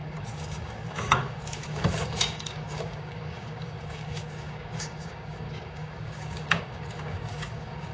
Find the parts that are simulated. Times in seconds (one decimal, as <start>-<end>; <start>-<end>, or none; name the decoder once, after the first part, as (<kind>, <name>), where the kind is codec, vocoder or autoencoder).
0.0-7.9 (codec, DAC)